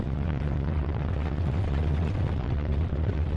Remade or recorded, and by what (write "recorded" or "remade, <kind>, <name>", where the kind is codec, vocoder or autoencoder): remade, vocoder, WaveNeXt